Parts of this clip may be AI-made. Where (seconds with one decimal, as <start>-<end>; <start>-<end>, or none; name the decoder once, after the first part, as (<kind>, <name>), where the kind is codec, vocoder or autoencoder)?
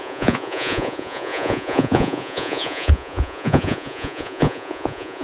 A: 0.0-5.2 (vocoder, Vocos)